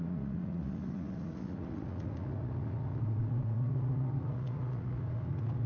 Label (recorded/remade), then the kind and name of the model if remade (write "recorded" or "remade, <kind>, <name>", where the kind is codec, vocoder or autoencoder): remade, vocoder, Vocos